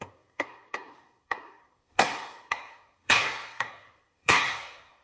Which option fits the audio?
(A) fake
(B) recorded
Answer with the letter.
A